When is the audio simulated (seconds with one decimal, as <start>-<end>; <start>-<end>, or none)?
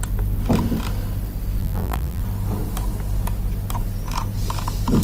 1.6-2.2